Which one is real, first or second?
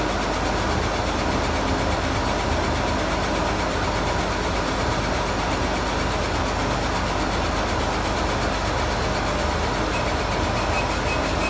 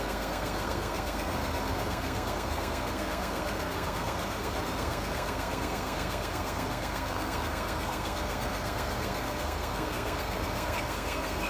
first